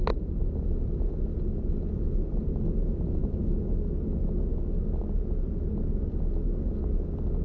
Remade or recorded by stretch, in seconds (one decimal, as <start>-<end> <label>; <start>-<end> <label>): 0.0-7.4 recorded